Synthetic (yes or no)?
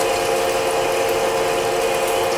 no